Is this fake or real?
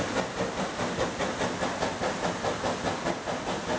real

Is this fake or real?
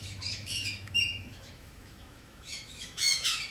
fake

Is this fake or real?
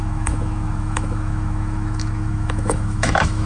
fake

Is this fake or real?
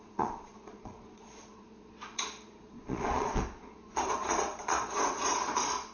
fake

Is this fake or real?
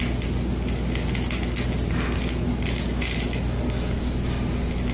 real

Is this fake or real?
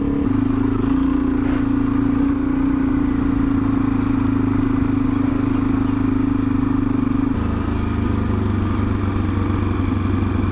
real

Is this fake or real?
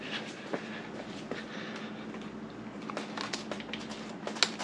real